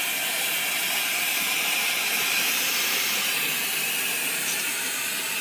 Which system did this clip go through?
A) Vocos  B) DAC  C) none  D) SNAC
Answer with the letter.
C